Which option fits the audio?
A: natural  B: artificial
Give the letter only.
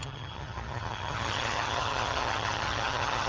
B